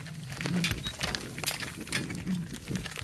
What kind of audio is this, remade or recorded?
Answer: recorded